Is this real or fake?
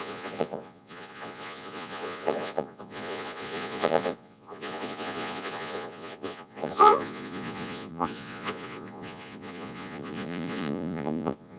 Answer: fake